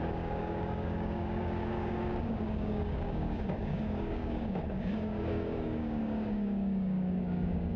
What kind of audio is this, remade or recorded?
remade